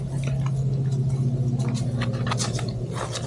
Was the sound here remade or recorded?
recorded